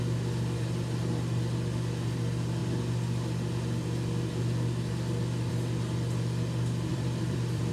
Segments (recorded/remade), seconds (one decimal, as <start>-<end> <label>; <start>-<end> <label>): 0.0-6.9 recorded; 6.9-7.7 remade